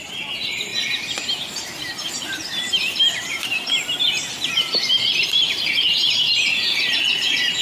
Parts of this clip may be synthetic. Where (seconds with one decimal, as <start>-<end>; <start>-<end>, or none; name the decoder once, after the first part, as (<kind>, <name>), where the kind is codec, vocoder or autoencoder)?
0.0-0.7 (vocoder, BigVGAN v2); 1.6-7.6